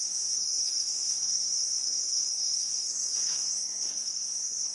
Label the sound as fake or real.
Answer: fake